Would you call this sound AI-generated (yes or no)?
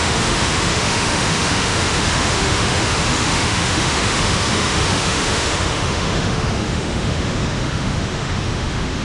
yes